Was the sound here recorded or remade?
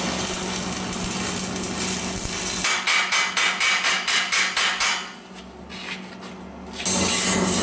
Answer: recorded